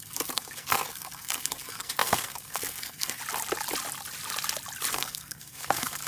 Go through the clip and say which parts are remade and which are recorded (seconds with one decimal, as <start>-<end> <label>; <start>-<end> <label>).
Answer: 0.0-3.2 remade; 3.2-4.9 recorded; 4.9-6.1 remade